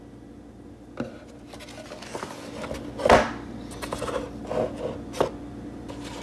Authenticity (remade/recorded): recorded